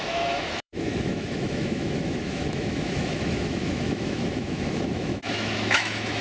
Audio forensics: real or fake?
fake